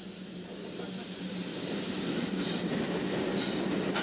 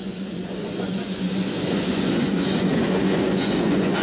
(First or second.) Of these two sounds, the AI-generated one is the second